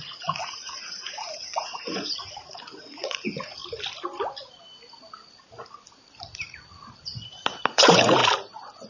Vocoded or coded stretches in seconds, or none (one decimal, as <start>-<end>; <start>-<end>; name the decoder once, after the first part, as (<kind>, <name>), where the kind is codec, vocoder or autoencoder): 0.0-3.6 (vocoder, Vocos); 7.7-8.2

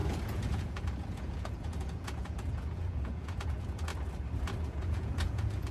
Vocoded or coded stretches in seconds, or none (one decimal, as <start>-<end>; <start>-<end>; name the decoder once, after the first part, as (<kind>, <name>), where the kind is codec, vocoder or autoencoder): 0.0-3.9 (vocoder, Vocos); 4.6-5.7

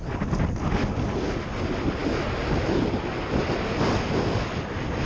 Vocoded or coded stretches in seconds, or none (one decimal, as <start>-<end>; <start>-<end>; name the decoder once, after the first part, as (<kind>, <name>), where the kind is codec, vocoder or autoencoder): none